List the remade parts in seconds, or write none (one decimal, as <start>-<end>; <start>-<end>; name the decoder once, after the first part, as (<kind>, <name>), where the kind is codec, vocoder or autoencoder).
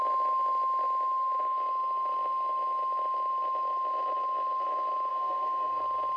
5.1-5.8 (codec, SNAC)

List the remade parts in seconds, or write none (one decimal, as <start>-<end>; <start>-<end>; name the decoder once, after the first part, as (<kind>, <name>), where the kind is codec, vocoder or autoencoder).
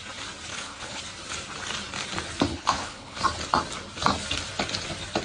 0.5-1.0 (codec, HILCodec); 2.5-3.2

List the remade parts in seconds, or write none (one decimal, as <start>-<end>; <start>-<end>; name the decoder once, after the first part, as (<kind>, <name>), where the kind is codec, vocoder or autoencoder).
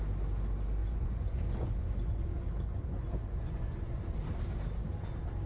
0.8-4.0 (vocoder, Vocos)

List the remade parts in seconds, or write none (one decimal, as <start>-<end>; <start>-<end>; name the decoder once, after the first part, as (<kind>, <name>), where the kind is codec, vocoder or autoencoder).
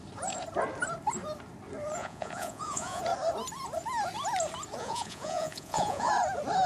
2.0-3.0 (vocoder, Vocos); 4.8-6.1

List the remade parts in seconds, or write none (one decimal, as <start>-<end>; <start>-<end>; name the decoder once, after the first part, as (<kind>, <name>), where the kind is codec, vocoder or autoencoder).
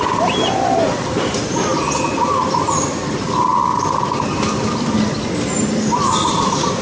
0.0-1.7 (vocoder, BigVGAN v2); 2.4-3.5; 5.6-6.8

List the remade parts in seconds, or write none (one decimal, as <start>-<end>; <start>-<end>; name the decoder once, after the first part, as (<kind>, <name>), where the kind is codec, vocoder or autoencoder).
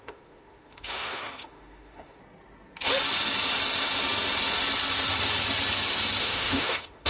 0.0-2.2 (autoencoder, DAC-VAE); 6.2-7.1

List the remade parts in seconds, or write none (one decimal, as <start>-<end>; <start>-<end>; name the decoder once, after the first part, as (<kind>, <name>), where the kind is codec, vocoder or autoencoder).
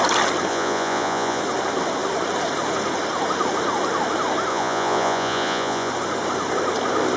0.5-1.4 (vocoder, Vocos); 4.5-5.9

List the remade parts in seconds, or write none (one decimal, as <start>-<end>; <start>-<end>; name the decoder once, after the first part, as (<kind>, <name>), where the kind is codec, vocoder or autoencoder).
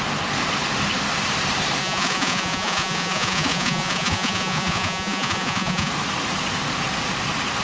1.8-5.9 (vocoder, Vocos)